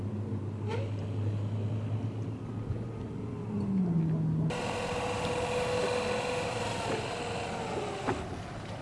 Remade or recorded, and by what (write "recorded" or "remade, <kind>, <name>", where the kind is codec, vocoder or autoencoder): recorded